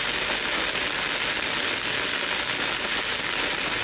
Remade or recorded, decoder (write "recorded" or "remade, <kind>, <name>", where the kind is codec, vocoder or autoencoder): recorded